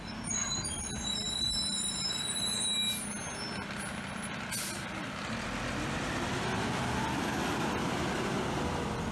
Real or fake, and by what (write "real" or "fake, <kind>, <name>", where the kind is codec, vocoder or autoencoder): real